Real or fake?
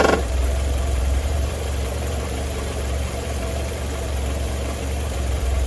fake